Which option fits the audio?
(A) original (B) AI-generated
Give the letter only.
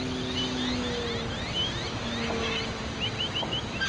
A